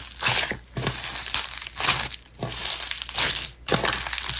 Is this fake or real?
real